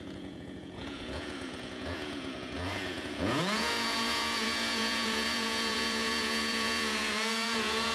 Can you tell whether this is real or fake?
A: fake